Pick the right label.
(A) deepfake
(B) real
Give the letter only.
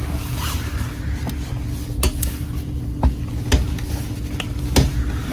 B